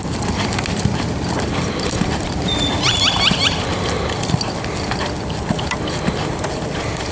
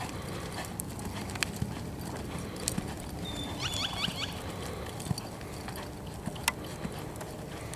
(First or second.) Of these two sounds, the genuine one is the second